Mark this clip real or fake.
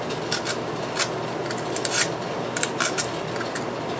real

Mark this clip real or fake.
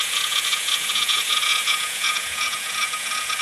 fake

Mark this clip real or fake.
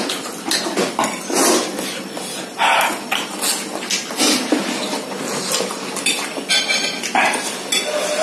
real